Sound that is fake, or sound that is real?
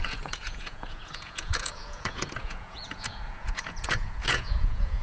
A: fake